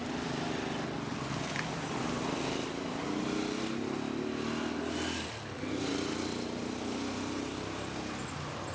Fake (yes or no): no